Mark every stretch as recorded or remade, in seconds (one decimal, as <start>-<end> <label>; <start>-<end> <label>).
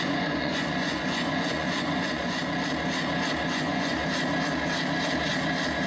0.0-2.4 remade; 2.4-3.5 recorded; 3.5-4.0 remade; 4.0-5.9 recorded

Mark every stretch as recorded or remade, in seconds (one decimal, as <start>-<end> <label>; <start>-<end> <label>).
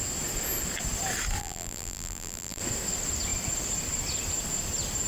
0.0-1.4 recorded; 1.4-2.6 remade; 2.6-5.1 recorded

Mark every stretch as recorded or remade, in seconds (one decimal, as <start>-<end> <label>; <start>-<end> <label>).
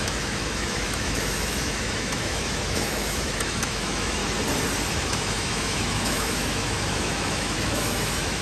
0.0-4.2 remade; 4.2-4.9 recorded; 4.9-8.4 remade